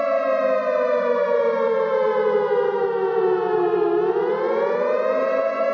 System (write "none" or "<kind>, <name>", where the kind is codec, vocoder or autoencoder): none